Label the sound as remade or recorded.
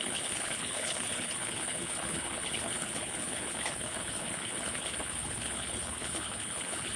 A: remade